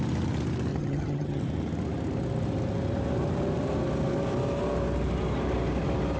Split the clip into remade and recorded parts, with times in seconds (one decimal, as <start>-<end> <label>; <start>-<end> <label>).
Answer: 0.0-0.7 recorded; 0.7-1.4 remade; 1.4-6.2 recorded